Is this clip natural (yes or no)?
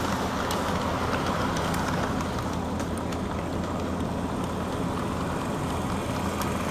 yes